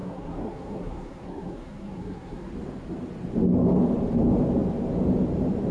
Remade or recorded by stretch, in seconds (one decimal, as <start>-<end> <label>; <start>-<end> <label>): 0.0-2.5 remade; 2.5-5.7 recorded

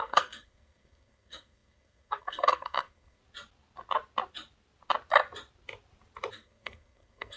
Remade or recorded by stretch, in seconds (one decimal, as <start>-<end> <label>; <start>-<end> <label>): 0.0-3.2 remade; 3.2-6.3 recorded; 6.3-7.4 remade

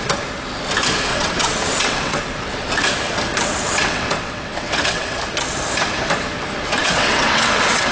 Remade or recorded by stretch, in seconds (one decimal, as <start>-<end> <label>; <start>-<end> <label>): 0.0-1.1 recorded; 1.1-2.2 remade; 2.2-3.7 recorded; 3.7-5.2 remade; 5.2-6.8 recorded; 6.8-7.9 remade